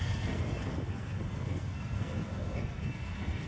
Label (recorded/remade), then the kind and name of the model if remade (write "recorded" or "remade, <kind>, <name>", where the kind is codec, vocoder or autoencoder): remade, codec, SNAC